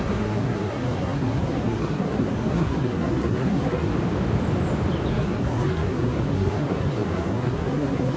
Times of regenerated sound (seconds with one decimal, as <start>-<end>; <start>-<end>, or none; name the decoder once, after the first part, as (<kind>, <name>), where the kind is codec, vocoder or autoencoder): 0.0-3.9 (codec, SNAC); 5.1-8.2